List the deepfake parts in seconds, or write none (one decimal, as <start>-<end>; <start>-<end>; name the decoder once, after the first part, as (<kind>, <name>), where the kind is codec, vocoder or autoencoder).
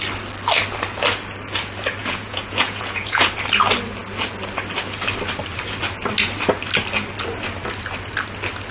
2.0-3.3 (vocoder, Vocos)